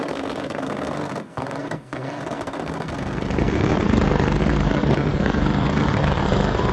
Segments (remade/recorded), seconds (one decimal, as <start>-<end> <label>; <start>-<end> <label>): 0.0-6.7 remade